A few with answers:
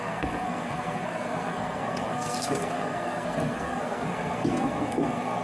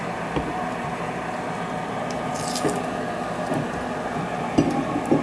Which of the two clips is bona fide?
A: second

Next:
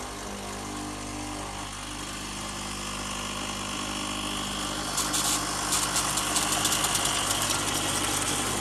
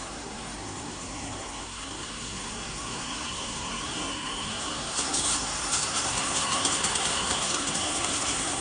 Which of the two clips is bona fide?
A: first